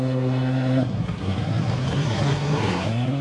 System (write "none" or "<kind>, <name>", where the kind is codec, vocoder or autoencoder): codec, SNAC